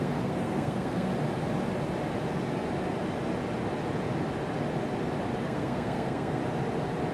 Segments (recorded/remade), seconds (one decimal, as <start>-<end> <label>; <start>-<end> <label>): 0.0-1.1 remade; 1.1-5.4 recorded; 5.4-6.4 remade; 6.4-7.1 recorded